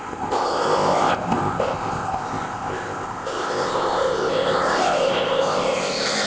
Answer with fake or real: fake